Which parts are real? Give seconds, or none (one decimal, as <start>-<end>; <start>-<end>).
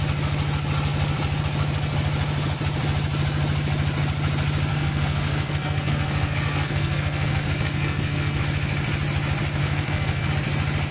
0.0-4.7; 8.4-9.6; 10.3-10.9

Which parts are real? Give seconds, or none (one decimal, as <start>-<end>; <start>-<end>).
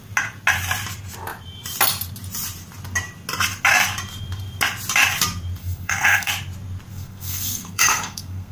0.0-5.6; 6.3-6.9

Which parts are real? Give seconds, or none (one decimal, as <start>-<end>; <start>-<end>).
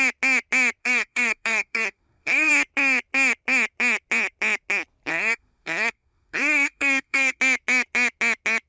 0.0-0.8; 2.5-5.1; 7.4-8.7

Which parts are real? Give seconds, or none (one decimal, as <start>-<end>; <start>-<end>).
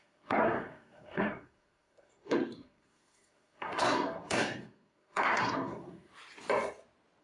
6.1-7.2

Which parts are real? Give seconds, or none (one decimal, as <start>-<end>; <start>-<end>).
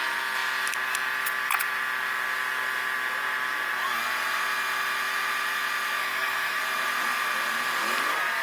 0.0-6.0; 6.6-8.4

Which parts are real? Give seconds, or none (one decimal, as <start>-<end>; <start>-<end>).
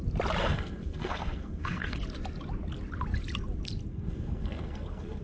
0.0-0.4; 2.0-3.9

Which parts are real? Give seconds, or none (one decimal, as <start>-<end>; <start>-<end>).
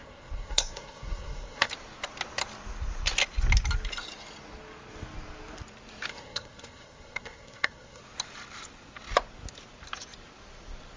1.7-6.1; 8.0-11.0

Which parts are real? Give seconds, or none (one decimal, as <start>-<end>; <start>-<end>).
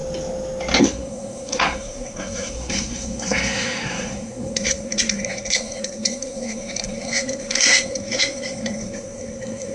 0.0-0.8